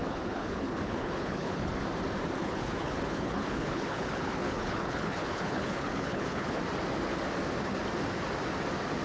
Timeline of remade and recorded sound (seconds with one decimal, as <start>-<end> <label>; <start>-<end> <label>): 0.0-1.7 remade; 1.7-2.4 recorded; 2.4-6.6 remade; 6.6-9.0 recorded